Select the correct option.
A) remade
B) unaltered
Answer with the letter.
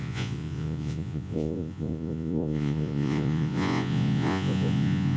A